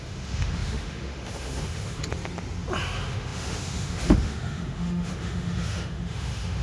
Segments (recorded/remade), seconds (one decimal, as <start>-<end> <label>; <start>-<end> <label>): 0.0-2.0 remade; 2.0-2.8 recorded; 2.8-6.6 remade